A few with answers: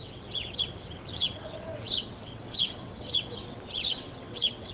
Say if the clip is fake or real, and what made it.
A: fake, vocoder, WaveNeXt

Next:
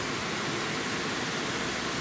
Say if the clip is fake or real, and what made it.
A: real